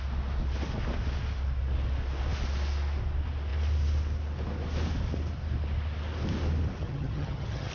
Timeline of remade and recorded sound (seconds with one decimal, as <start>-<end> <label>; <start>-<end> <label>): 0.0-6.8 recorded; 6.8-7.7 remade